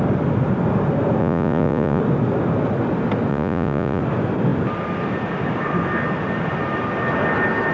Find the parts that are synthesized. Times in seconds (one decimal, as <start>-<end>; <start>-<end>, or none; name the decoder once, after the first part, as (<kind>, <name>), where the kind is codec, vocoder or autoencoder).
1.2-2.0 (vocoder, Vocos); 3.3-4.0